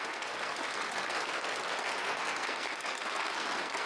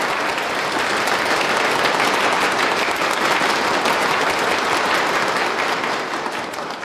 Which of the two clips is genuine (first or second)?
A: second